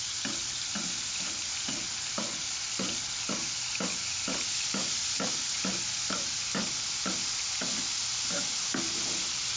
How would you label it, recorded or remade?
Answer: recorded